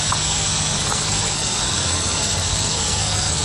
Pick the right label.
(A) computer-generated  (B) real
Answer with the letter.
A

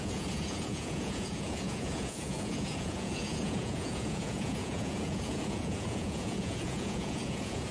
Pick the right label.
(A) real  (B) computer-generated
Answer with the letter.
B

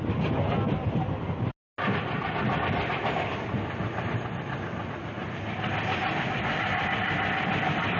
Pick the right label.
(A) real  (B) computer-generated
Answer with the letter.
A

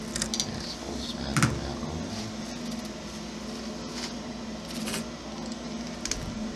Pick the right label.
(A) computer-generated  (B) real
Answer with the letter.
B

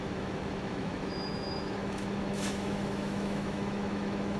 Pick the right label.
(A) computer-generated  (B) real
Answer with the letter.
A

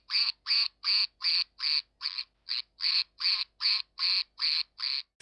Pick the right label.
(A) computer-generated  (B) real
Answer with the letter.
B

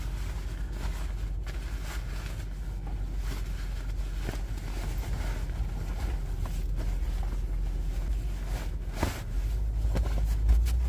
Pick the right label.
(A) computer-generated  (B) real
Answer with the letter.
B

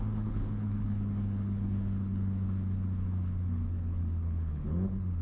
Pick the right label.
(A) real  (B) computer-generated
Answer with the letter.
B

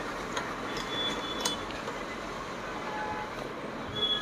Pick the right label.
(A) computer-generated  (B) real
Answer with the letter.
B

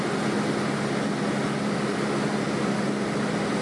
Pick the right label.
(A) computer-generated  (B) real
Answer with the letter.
B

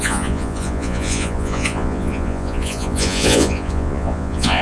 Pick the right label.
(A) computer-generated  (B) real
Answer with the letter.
A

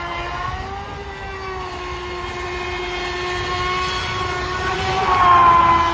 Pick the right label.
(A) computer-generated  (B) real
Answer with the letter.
B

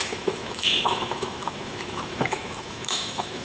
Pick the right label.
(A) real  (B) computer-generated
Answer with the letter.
B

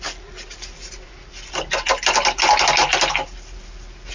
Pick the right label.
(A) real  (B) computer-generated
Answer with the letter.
A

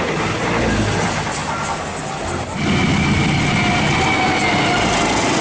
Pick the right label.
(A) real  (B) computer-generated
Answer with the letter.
A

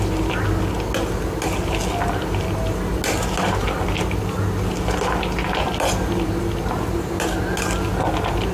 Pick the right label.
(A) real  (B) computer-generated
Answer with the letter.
A